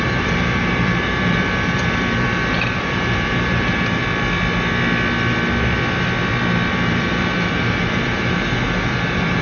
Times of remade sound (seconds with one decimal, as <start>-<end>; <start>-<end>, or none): 0.0-4.0; 6.7-9.4